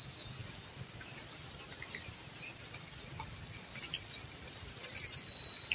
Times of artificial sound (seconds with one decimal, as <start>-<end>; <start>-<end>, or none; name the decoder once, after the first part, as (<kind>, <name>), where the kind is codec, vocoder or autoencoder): none